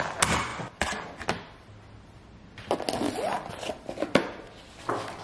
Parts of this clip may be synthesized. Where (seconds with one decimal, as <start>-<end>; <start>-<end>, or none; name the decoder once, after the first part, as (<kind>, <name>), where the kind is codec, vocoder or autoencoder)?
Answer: 0.5-1.1 (vocoder, BigVGAN v2)